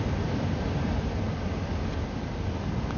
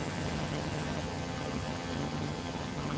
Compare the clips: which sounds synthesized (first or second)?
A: second